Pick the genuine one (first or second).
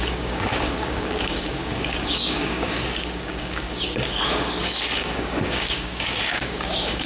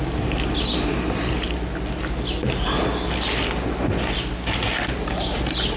second